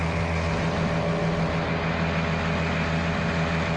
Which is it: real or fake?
real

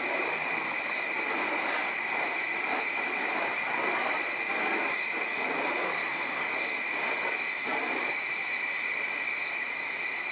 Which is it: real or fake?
real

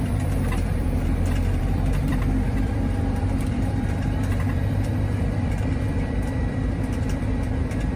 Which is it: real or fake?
fake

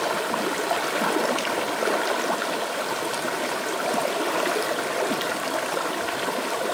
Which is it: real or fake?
real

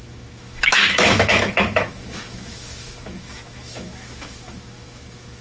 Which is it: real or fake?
fake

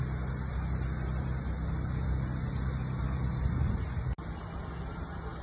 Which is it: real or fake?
real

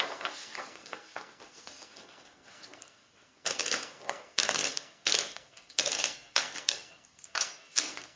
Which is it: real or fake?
fake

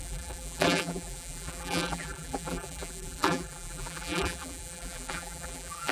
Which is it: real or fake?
fake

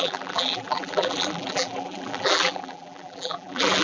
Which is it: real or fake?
fake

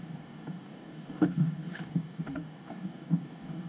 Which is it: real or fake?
fake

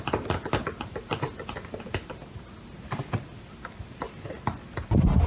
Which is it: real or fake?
real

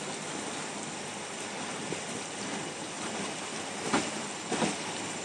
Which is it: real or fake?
real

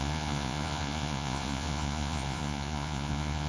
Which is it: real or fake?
fake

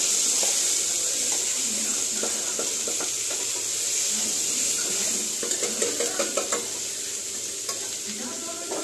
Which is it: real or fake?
real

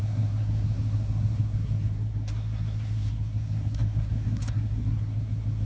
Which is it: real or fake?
fake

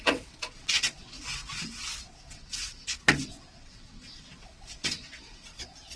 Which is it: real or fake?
fake